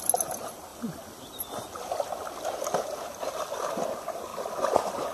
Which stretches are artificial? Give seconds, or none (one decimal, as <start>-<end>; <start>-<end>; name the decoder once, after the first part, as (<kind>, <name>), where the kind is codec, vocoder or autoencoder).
none